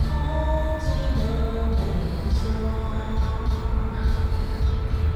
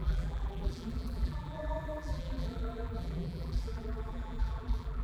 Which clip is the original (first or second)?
first